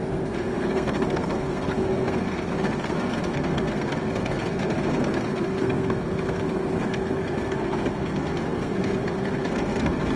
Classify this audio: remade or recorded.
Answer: remade